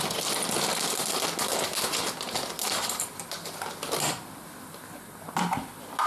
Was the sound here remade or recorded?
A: recorded